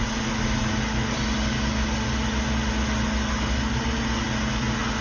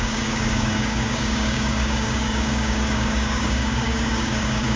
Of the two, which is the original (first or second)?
first